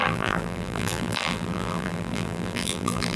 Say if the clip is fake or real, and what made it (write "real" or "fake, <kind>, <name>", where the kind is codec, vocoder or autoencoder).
fake, vocoder, BigVGAN v2